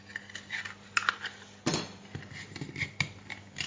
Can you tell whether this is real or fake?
real